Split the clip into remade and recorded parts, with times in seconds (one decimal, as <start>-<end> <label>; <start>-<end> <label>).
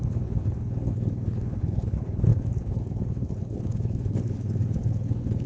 0.0-5.5 remade